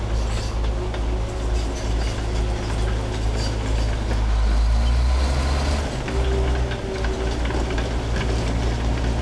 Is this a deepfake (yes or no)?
no